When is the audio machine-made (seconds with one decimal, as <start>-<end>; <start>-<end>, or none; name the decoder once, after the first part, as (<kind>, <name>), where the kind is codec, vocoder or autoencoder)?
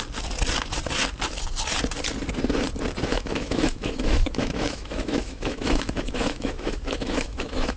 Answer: 3.1-7.8 (autoencoder, DAC-VAE)